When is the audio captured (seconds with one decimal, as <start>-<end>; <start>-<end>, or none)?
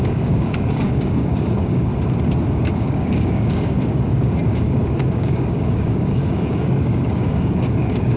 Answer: 1.9-2.5